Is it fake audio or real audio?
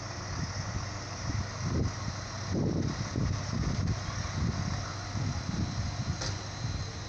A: real